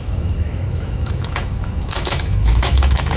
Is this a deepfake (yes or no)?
yes